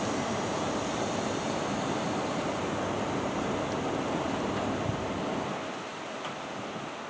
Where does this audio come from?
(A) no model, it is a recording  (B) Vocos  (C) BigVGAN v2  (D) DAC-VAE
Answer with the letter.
A